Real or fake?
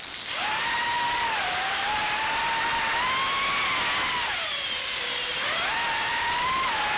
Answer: real